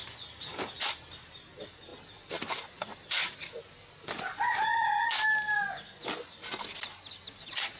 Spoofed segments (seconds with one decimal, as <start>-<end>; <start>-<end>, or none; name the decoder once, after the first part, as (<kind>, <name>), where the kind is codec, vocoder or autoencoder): none